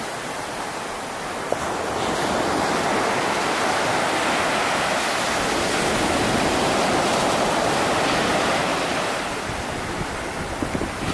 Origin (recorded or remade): recorded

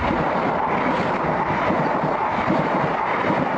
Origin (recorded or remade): recorded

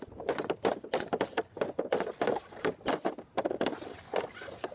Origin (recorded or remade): recorded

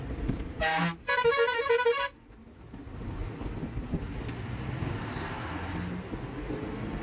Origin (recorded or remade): recorded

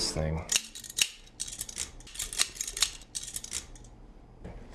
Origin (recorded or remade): recorded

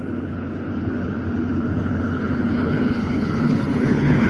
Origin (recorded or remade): remade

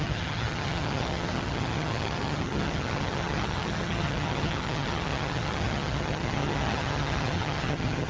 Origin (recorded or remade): remade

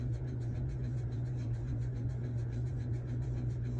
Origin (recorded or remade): remade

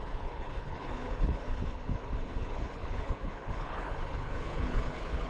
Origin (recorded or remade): remade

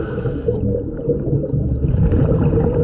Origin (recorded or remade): recorded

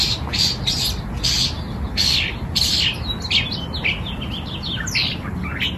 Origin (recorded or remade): recorded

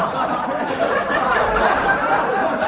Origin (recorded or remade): remade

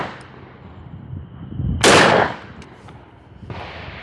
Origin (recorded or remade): recorded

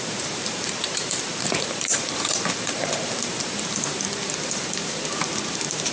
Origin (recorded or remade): remade